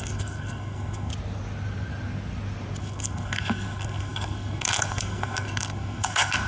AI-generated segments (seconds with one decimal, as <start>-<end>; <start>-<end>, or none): 0.0-1.1; 2.8-6.5